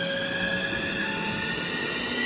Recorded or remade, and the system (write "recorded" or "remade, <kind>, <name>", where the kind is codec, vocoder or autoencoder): recorded